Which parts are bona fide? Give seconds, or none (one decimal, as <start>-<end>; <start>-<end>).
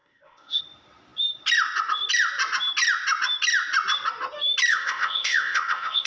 0.6-4.7